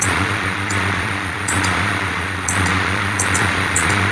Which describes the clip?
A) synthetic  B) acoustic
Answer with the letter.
A